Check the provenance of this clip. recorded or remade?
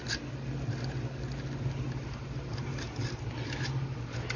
recorded